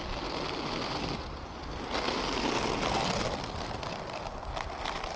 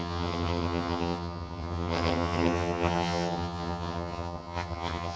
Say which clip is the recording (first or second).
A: first